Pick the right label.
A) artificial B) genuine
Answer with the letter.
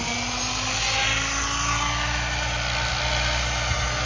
B